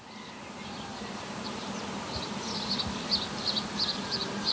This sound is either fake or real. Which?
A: fake